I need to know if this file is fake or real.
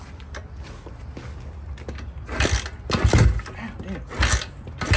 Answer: real